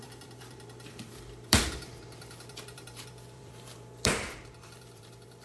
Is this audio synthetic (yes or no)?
yes